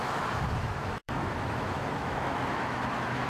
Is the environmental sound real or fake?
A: fake